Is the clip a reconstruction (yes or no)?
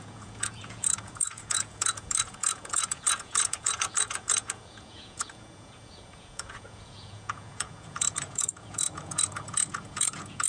yes